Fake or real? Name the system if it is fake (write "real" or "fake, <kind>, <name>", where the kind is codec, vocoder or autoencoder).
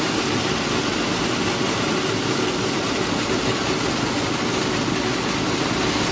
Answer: real